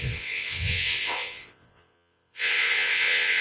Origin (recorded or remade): remade